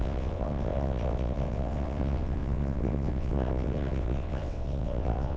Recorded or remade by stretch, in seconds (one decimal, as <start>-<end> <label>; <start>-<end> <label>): 0.0-5.4 remade